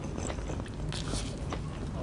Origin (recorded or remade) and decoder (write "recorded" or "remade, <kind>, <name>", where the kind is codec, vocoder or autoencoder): recorded